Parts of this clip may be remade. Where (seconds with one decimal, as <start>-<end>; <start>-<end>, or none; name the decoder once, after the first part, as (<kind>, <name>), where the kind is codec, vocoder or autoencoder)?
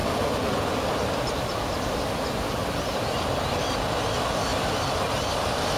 none